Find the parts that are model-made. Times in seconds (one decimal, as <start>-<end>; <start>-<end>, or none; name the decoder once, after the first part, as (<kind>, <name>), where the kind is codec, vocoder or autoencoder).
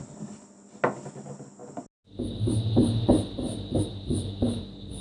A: none